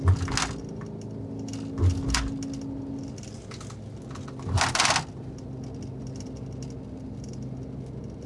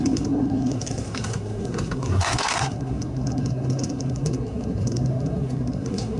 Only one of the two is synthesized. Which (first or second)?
second